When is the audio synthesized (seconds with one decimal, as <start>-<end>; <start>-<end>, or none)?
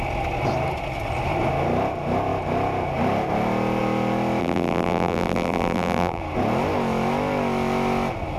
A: 4.4-6.2